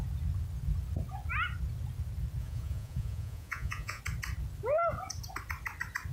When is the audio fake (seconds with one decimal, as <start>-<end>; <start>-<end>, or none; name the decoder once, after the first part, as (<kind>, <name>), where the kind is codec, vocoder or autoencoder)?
2.4-4.0 (vocoder, Vocos)